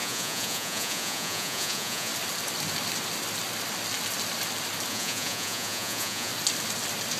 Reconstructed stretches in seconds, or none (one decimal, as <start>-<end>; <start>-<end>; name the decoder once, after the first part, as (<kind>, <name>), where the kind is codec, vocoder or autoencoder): 0.0-2.1 (vocoder, Vocos); 4.9-6.3